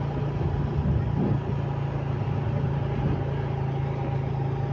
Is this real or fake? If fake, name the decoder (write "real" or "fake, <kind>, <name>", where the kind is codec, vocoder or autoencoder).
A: real